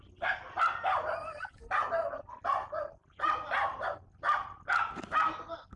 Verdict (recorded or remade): recorded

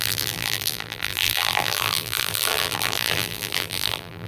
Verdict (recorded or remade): remade